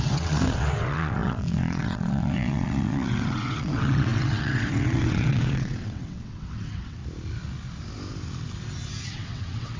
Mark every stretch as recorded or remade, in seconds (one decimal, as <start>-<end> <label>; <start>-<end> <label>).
0.0-7.0 remade; 7.0-9.0 recorded; 9.0-9.8 remade